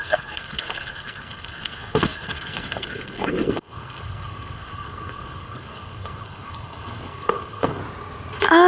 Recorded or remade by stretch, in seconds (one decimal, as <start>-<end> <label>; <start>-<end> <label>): 0.0-7.8 remade; 7.8-8.7 recorded